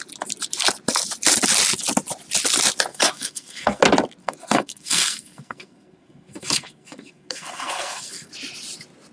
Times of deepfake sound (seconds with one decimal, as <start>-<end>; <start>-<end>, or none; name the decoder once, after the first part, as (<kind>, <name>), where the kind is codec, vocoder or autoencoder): 2.9-3.8 (codec, SNAC); 4.2-8.3